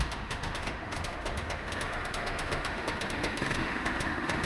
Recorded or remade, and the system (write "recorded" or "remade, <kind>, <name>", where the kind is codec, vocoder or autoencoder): remade, autoencoder, DAC-VAE